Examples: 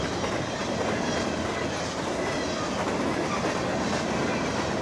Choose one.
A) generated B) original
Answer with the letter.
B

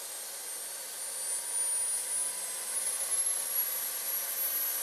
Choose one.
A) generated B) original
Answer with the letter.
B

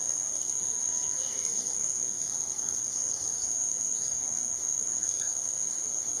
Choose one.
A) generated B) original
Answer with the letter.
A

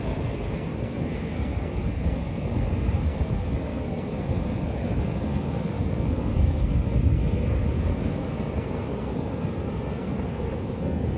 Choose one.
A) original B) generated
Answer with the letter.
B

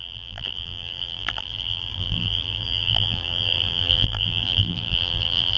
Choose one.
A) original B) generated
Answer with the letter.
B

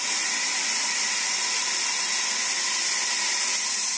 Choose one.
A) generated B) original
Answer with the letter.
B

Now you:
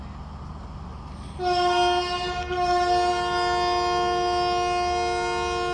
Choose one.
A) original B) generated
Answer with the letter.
A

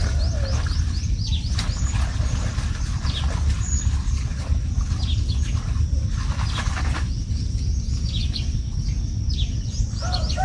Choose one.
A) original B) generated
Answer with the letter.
A